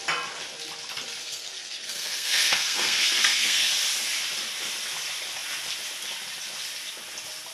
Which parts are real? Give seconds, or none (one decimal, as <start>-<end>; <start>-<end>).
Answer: 0.0-1.2; 3.7-7.5